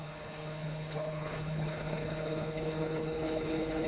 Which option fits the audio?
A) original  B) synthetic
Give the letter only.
B